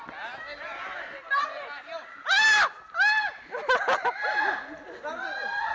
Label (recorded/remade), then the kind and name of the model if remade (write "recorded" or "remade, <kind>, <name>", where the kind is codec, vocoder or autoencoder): recorded